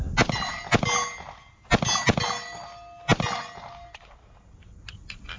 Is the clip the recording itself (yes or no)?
yes